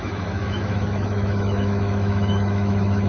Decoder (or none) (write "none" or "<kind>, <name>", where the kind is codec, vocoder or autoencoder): autoencoder, DAC-VAE